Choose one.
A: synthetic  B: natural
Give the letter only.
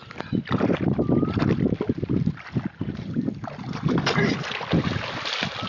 B